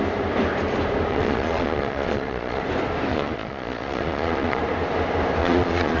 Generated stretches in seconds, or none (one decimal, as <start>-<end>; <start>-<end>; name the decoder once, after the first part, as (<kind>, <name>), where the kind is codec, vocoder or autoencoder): 1.1-2.6 (vocoder, Vocos); 3.1-4.6; 5.4-6.0